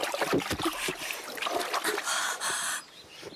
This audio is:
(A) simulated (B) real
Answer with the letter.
A